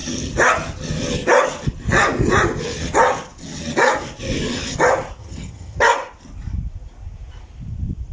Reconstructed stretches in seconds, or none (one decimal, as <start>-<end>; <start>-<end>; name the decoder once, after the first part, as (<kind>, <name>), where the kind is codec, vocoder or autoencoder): 5.2-5.8 (vocoder, HiFi-GAN)